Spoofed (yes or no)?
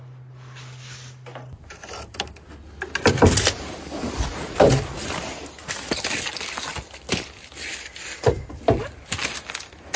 no